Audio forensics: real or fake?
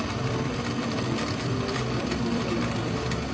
real